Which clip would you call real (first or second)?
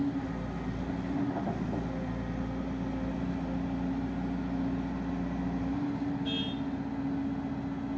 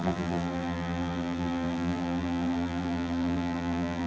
first